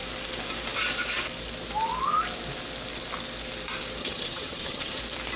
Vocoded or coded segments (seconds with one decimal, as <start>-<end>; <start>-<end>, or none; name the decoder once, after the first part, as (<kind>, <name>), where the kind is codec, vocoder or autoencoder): 4.0-5.0 (vocoder, HiFi-GAN)